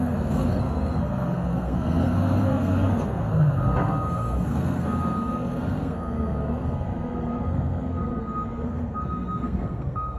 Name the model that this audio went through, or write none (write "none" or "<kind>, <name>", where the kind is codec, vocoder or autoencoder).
codec, SNAC